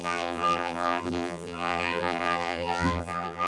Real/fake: fake